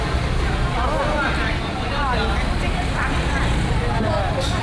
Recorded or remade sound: recorded